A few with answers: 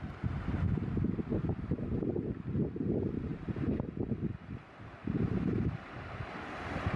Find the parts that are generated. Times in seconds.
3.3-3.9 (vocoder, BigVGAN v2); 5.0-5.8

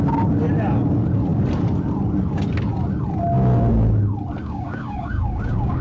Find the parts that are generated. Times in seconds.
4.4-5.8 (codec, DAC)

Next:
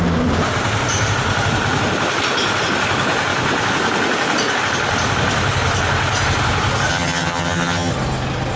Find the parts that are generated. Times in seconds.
6.9-7.9 (vocoder, HiFi-GAN)

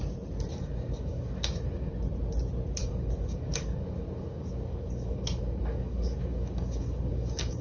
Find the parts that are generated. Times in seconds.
0.5-1.9 (codec, DAC); 2.8-7.6

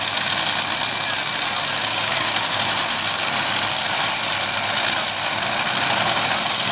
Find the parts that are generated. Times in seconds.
1.8-2.6 (codec, DAC)

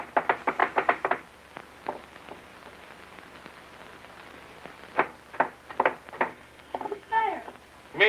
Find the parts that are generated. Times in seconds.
6.3-7.2 (codec, SNAC)

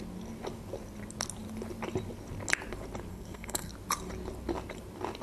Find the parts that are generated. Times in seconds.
3.1-3.7 (codec, SNAC)